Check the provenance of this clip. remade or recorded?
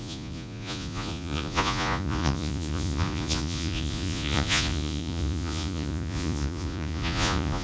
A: remade